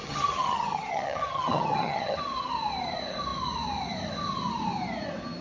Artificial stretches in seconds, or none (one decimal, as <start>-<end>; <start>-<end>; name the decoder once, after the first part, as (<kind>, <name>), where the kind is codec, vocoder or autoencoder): 0.0-2.2 (vocoder, HiFi-GAN)